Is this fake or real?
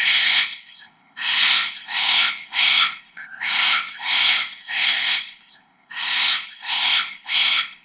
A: fake